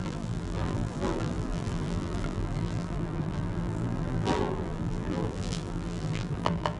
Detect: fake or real fake